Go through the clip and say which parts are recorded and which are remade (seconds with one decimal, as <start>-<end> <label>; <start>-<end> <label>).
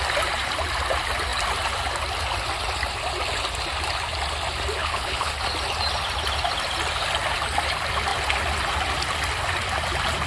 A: 0.0-4.8 recorded; 4.8-5.3 remade; 5.3-10.3 recorded